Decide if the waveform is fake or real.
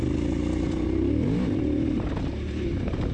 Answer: real